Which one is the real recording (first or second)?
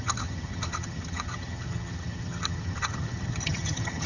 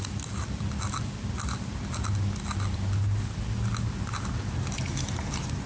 second